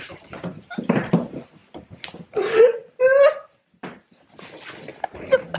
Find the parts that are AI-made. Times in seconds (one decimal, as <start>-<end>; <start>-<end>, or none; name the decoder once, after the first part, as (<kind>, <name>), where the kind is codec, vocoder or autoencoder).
0.0-1.6 (vocoder, BigVGAN v2); 5.0-5.6